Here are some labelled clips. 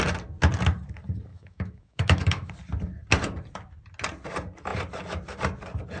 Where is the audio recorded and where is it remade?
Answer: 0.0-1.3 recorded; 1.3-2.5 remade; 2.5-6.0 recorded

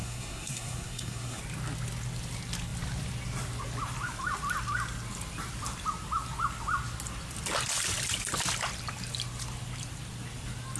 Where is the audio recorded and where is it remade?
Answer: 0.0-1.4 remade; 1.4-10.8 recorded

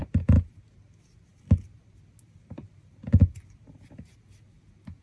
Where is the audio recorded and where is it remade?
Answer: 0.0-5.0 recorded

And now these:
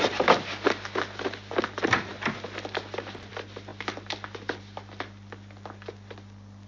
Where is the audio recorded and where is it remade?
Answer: 0.0-6.7 recorded

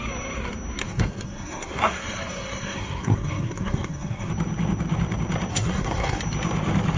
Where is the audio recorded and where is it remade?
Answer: 0.0-0.8 recorded; 0.8-4.3 remade; 4.3-5.5 recorded; 5.5-6.2 remade; 6.2-7.0 recorded

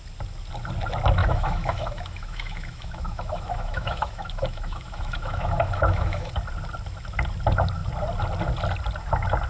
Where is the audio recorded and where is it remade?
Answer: 0.0-1.2 recorded; 1.2-6.3 remade; 6.3-9.5 recorded

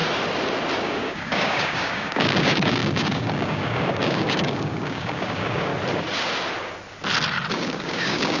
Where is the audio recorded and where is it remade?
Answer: 0.0-0.8 recorded; 0.8-5.7 remade; 5.7-7.5 recorded; 7.5-8.4 remade